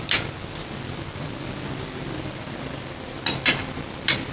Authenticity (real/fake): real